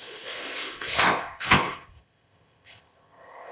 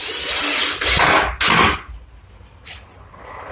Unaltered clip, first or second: second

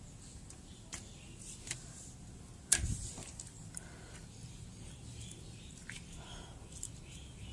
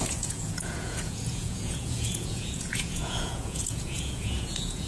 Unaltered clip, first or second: first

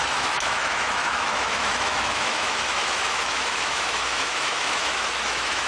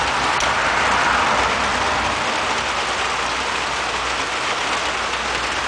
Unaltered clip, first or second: second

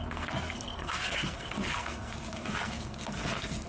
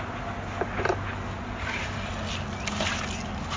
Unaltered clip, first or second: second